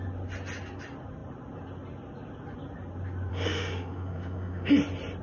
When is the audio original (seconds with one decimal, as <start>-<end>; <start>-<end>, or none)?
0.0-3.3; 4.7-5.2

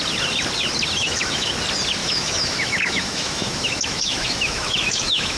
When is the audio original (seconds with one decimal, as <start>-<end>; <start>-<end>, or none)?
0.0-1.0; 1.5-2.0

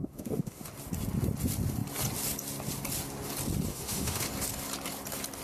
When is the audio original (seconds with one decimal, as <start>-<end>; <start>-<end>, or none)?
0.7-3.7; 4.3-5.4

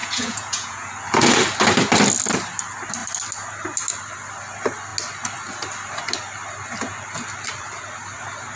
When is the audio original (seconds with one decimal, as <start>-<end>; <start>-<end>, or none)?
0.9-8.6